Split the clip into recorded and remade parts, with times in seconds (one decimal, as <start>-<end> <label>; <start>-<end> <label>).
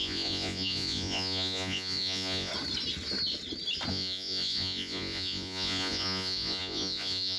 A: 0.0-2.5 remade; 2.5-3.9 recorded; 3.9-7.4 remade